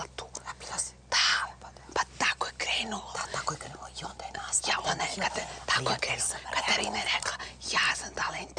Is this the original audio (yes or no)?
yes